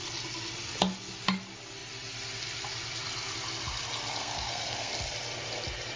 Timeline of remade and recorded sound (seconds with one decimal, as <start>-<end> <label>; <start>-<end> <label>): 0.0-4.2 recorded; 4.2-4.9 remade; 4.9-6.0 recorded